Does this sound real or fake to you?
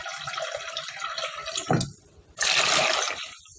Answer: real